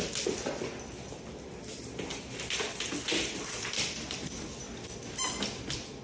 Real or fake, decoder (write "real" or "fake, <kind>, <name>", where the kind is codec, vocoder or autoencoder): real